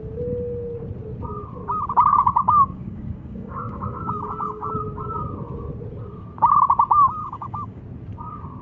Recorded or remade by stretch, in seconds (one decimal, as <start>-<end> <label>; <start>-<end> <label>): 0.0-2.1 recorded; 2.1-4.7 remade; 4.7-7.2 recorded; 7.2-7.8 remade; 7.8-8.6 recorded